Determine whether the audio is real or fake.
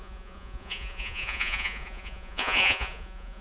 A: fake